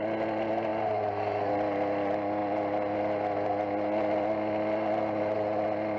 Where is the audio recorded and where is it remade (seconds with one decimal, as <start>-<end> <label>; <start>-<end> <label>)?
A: 0.0-6.0 recorded